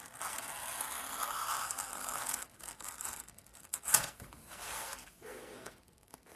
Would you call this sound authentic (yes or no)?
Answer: no